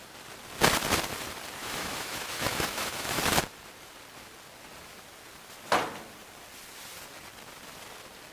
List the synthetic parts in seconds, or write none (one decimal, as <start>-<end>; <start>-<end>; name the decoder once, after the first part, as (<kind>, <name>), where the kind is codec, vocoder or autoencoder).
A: 1.6-3.2 (autoencoder, DAC-VAE)